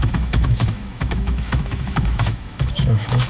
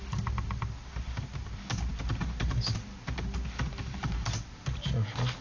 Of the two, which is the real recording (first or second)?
second